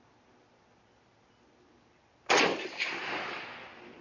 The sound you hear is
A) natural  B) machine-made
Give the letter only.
A